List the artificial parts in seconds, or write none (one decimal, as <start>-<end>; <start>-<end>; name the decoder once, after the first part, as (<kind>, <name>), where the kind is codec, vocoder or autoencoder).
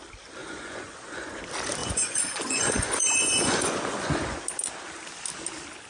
0.4-1.4 (vocoder, Vocos); 1.8-4.4